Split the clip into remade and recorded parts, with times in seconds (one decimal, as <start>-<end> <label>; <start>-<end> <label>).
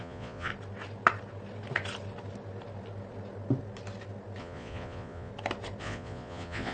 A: 0.0-0.5 remade; 0.5-4.4 recorded; 4.4-5.3 remade; 5.3-5.8 recorded; 5.8-6.7 remade